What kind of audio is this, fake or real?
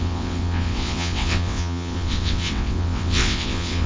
fake